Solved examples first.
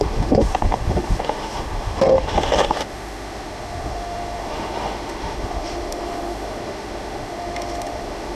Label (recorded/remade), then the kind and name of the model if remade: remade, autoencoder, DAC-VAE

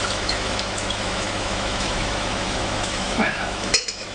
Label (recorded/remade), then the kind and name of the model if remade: remade, autoencoder, DAC-VAE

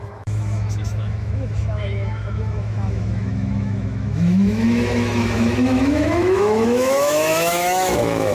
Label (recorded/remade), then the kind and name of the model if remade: remade, autoencoder, DAC-VAE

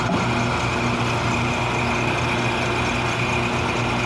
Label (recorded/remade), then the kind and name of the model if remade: recorded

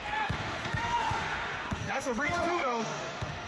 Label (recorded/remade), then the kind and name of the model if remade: remade, autoencoder, DAC-VAE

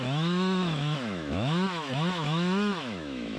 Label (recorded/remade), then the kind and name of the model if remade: remade, autoencoder, DAC-VAE